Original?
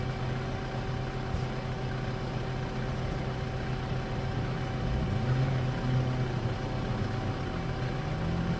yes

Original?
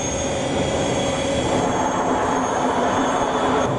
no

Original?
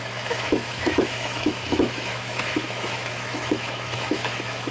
no